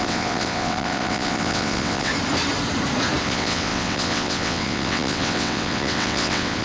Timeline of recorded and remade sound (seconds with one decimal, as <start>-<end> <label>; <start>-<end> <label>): 0.0-2.1 remade; 2.1-3.2 recorded; 3.2-6.6 remade

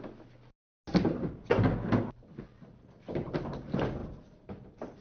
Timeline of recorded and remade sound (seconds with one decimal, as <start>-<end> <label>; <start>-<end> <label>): 0.0-5.0 recorded

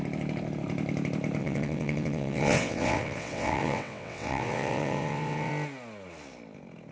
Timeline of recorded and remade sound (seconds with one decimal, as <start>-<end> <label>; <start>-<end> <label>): 0.0-1.4 recorded; 1.4-5.5 remade; 5.5-6.9 recorded

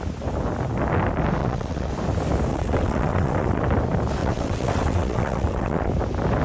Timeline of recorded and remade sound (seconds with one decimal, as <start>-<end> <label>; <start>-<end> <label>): 0.0-1.4 recorded; 1.4-1.9 remade; 1.9-2.5 recorded; 2.5-3.6 remade; 3.6-4.2 recorded; 4.2-5.9 remade; 5.9-6.4 recorded

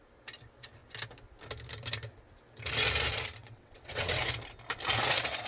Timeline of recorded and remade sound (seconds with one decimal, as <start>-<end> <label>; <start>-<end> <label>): 0.0-3.4 recorded; 3.4-4.2 remade; 4.2-5.5 recorded

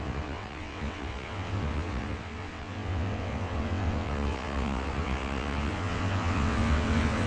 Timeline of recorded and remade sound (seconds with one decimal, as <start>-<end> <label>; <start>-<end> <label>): 0.0-7.3 remade

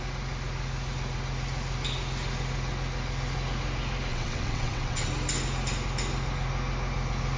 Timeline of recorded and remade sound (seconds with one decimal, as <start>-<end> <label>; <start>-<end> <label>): 0.0-4.1 recorded; 4.1-5.1 remade; 5.1-7.4 recorded